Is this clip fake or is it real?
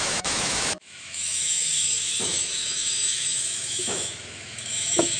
fake